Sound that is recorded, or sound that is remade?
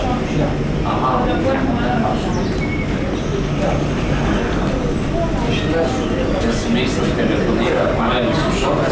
recorded